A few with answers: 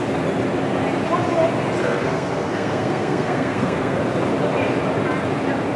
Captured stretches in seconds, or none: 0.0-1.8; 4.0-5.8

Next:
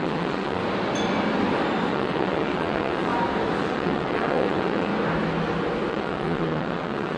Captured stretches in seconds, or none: 0.6-1.9; 3.1-3.6; 4.9-5.9

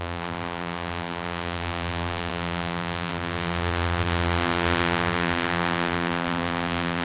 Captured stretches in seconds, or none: none

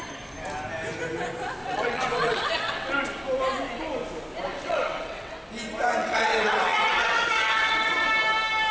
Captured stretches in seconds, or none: 0.0-1.6; 2.9-4.5; 5.3-6.0; 8.1-8.7

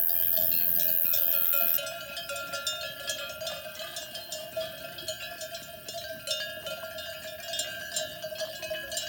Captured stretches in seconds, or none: 0.0-9.1

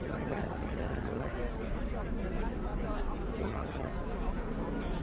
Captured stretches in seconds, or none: 1.3-3.4; 3.9-5.0